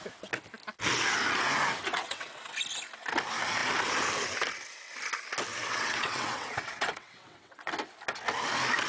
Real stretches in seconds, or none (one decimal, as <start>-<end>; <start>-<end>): 0.0-1.9; 2.5-5.5; 7.7-8.9